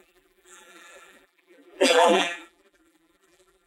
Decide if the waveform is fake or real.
fake